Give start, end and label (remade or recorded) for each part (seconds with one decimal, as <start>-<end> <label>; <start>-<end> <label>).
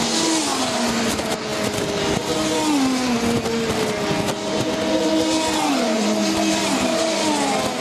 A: 0.0-7.8 recorded